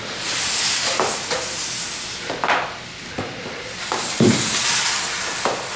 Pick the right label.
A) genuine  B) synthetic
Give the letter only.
A